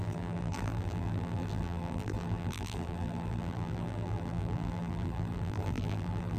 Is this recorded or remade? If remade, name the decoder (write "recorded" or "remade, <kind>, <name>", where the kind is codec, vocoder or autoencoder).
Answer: remade, vocoder, BigVGAN v2